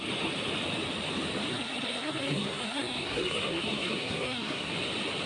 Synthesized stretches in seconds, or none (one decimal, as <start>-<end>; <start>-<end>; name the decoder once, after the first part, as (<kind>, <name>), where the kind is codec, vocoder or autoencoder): 1.5-4.7 (codec, SNAC)